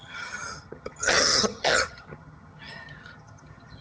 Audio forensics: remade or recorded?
remade